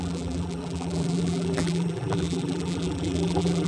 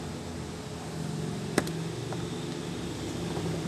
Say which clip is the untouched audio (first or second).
second